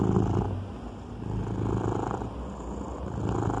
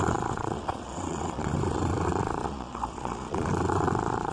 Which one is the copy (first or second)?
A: second